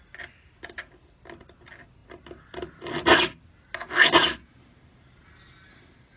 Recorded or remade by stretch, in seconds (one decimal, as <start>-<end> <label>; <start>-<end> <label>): 0.0-6.2 recorded